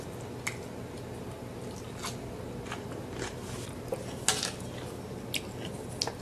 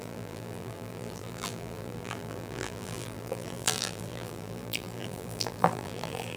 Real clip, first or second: first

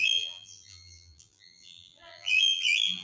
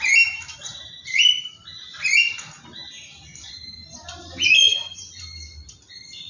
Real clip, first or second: second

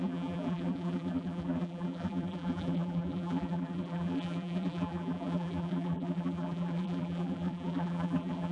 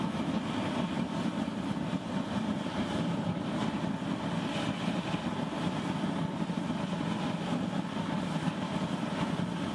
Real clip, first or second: second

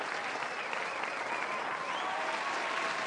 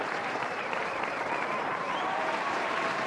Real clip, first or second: first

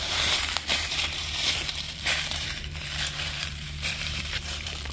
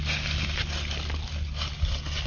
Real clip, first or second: second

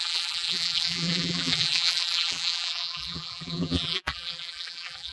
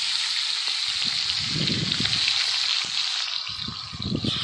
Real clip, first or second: second